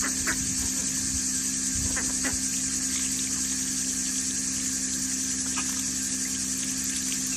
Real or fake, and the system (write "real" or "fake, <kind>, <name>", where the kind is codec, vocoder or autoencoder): real